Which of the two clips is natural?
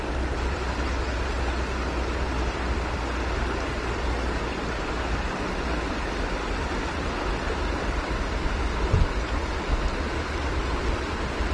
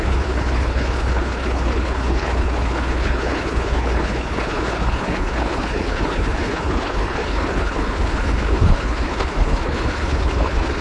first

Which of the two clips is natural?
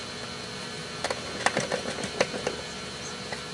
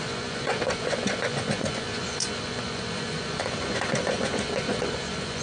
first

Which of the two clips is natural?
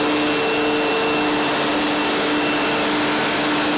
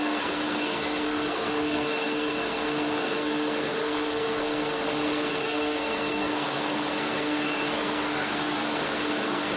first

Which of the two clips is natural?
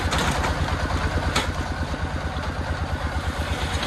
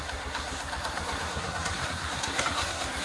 first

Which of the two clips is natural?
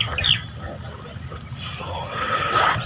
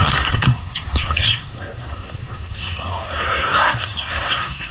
first